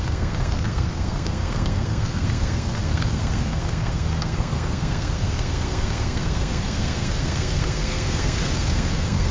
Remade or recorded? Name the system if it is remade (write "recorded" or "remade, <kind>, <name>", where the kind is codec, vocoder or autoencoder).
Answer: remade, codec, SNAC